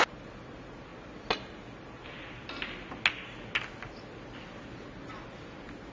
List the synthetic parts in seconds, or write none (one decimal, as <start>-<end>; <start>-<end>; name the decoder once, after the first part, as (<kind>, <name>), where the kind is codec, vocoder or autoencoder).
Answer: none